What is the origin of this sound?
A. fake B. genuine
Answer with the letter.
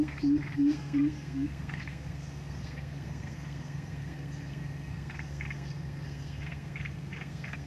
A